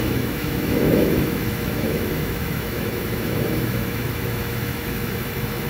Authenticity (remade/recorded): remade